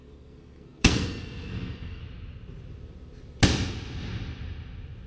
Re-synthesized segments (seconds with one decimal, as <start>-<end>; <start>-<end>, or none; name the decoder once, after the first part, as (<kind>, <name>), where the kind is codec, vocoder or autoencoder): 0.0-2.0 (codec, SNAC)